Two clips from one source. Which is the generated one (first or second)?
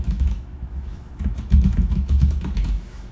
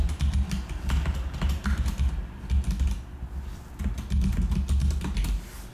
first